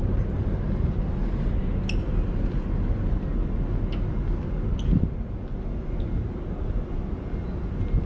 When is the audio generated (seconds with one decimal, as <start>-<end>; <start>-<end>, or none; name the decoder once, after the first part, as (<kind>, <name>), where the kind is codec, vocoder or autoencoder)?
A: none